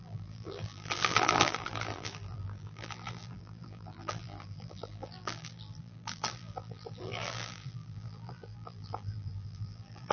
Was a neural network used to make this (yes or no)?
yes